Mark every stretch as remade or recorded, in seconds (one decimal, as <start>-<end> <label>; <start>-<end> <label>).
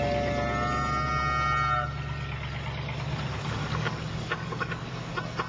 0.0-3.6 recorded; 3.6-4.9 remade; 4.9-5.5 recorded